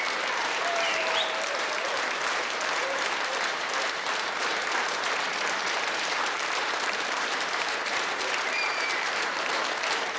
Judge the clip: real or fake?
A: fake